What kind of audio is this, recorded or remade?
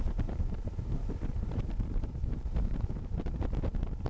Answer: remade